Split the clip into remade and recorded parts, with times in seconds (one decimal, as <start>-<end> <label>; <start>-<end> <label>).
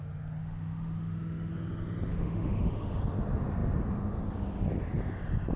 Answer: 0.0-0.4 recorded; 0.4-1.5 remade; 1.5-2.1 recorded; 2.1-3.0 remade; 3.0-5.6 recorded